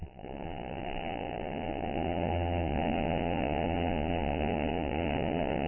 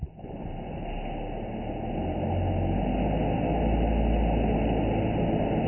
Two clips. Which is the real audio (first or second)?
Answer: second